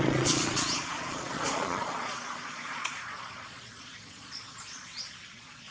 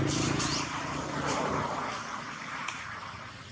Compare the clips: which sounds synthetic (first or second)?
first